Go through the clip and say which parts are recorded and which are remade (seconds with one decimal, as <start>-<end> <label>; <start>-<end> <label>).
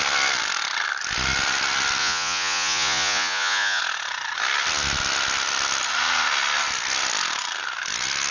0.0-2.0 recorded; 2.0-3.8 remade; 3.8-8.3 recorded